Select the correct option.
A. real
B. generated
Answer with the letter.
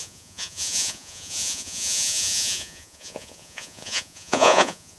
B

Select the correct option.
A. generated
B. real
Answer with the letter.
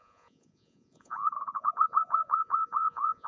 A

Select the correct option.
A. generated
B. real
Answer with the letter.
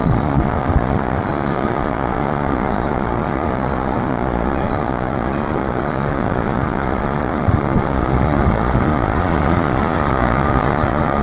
A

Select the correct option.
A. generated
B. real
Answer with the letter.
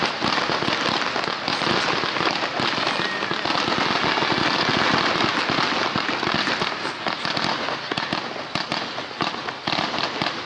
B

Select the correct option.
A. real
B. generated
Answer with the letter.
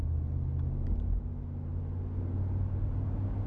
A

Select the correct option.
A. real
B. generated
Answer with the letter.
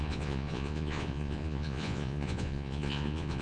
B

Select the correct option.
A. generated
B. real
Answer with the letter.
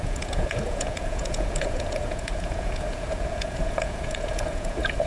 A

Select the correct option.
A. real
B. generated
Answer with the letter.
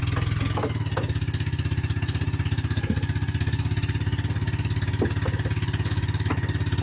A